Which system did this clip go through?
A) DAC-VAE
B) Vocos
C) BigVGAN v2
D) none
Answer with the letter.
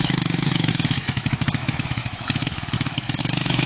A